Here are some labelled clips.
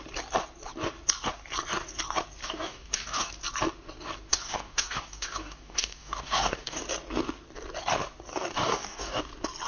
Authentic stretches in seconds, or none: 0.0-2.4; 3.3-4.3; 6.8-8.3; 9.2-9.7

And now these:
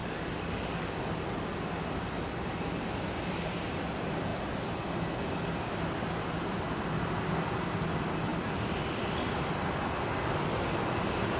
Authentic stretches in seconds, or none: 1.0-11.4

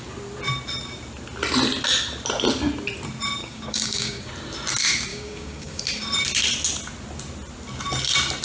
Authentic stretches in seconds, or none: 0.0-3.4; 4.3-5.1; 5.8-8.4

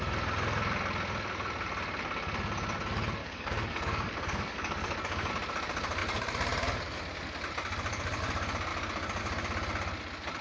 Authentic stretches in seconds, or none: 0.0-3.2; 5.3-10.4

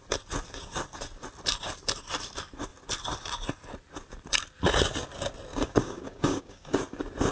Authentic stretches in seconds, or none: 0.0-5.5; 6.8-7.3

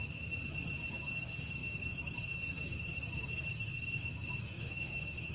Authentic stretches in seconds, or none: 0.0-0.9

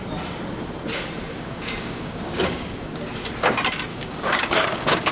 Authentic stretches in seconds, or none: 0.0-1.2; 3.1-3.9